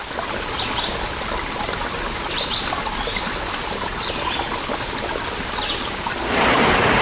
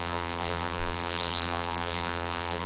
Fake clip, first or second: second